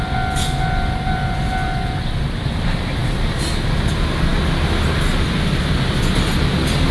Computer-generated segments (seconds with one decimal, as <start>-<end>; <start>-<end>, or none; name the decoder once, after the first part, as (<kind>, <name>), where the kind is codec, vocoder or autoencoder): none